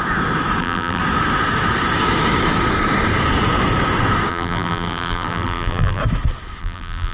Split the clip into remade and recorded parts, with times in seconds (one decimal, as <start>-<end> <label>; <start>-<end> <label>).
0.0-0.6 recorded; 0.6-1.0 remade; 1.0-4.3 recorded; 4.3-6.0 remade; 6.0-6.6 recorded; 6.6-7.1 remade